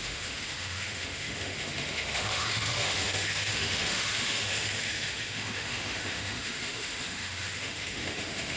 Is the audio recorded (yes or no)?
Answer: no